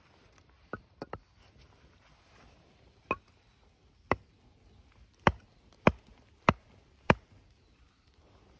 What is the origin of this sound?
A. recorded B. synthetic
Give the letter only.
A